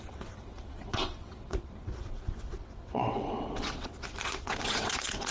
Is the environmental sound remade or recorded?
remade